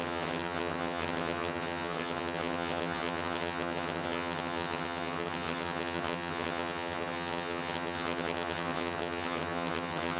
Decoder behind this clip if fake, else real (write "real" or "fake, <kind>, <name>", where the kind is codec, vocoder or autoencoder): fake, vocoder, HiFi-GAN